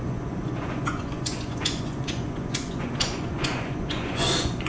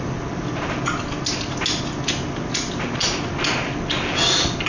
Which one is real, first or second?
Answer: second